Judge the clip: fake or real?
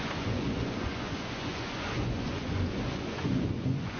fake